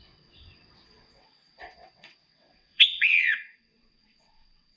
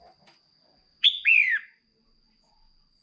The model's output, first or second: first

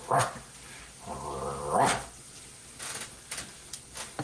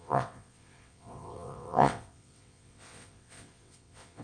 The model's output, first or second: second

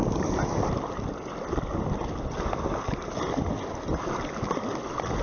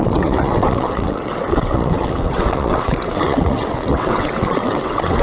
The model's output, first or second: second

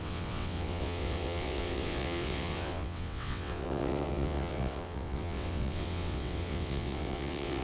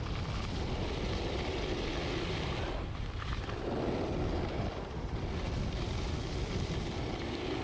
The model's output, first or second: first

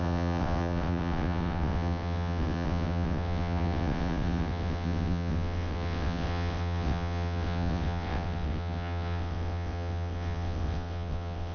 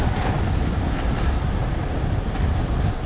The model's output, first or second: first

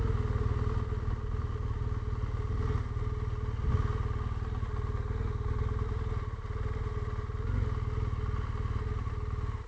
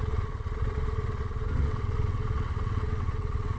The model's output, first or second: second